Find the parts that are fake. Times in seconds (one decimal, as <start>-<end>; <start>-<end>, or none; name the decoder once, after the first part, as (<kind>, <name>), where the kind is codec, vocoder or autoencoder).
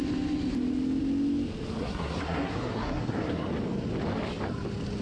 1.8-3.5 (codec, SNAC)